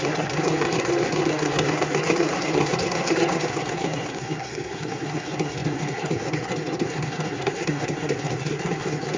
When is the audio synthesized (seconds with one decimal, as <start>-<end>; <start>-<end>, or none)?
0.0-9.2